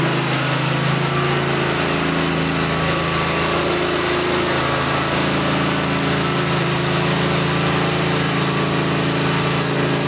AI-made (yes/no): no